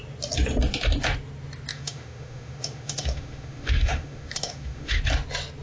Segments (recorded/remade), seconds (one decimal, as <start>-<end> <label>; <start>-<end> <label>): 0.0-1.7 recorded; 1.7-5.0 remade; 5.0-5.6 recorded